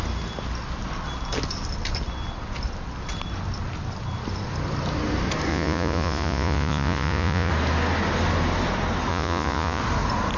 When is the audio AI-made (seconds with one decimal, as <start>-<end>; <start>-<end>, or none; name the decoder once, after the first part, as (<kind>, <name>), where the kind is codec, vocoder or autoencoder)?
5.5-7.5 (vocoder, Vocos); 9.1-9.8